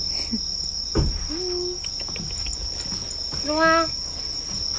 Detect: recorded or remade recorded